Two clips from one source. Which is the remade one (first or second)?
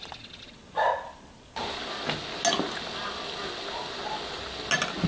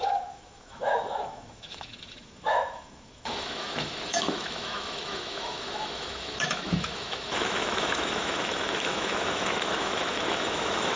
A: second